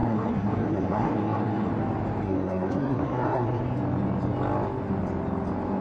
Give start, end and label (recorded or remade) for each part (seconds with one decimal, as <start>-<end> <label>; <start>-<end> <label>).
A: 0.0-1.7 remade; 1.7-2.2 recorded; 2.2-3.6 remade; 3.6-5.8 recorded